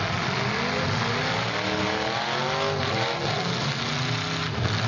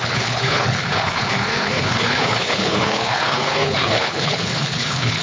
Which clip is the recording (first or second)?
first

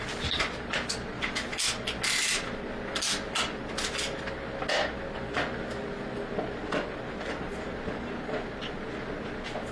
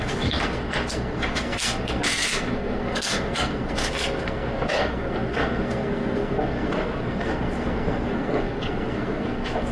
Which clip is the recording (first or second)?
first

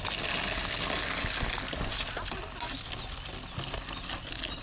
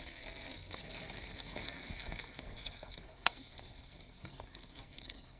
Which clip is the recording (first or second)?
first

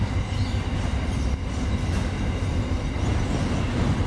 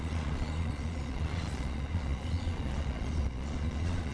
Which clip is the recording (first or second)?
first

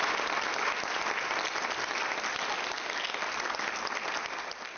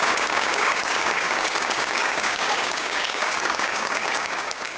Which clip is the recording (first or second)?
first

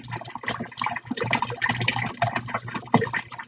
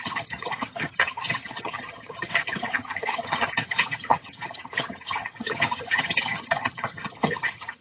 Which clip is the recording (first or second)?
first